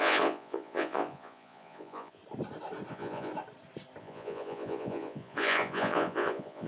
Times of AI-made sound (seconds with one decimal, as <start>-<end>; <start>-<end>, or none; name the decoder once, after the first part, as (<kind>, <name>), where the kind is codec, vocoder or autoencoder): 0.0-2.2 (vocoder, Vocos); 2.9-3.3; 4.0-6.7